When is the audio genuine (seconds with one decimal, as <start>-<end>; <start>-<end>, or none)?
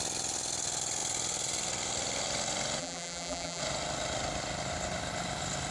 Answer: 0.0-2.8; 3.6-5.7